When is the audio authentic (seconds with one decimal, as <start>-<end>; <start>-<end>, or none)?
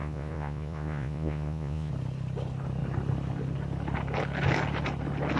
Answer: 1.9-5.4